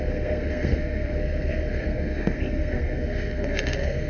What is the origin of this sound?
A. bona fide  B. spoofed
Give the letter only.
B